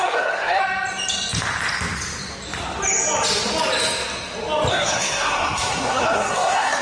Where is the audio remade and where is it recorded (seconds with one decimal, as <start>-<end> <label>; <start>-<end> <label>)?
0.0-0.6 remade; 0.6-4.7 recorded; 4.7-6.8 remade